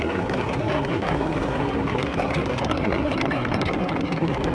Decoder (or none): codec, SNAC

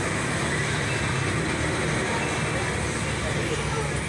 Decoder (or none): none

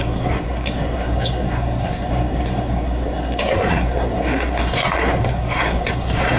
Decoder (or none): codec, SNAC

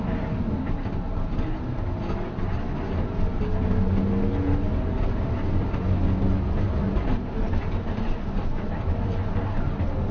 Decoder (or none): none